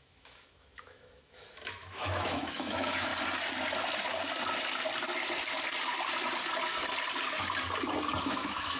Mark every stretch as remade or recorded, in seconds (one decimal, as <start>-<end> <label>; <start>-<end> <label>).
0.0-3.1 remade; 3.1-8.2 recorded; 8.2-8.8 remade